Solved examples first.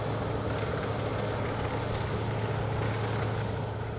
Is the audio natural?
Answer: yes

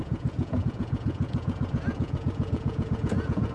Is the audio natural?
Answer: no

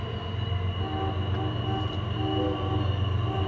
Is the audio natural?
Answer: yes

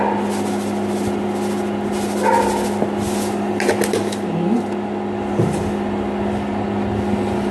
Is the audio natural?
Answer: yes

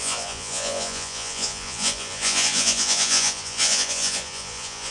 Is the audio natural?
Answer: no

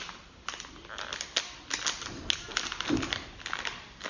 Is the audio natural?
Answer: yes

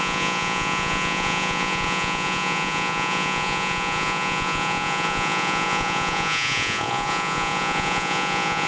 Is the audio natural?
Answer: no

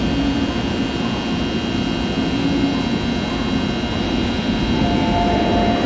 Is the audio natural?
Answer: yes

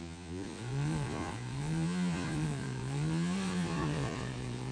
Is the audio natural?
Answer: no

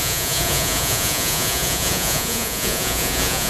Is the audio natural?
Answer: no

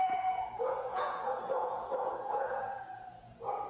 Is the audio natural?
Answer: no